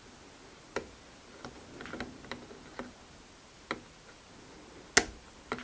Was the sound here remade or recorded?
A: recorded